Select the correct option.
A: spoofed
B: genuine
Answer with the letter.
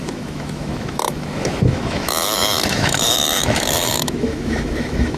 A